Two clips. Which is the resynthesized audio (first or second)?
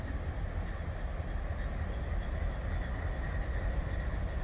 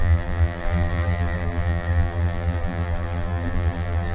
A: second